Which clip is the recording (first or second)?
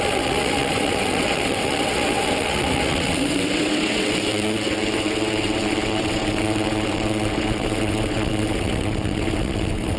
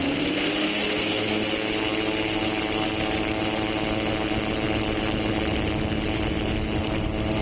second